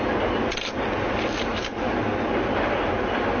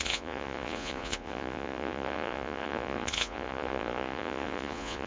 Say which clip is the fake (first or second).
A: second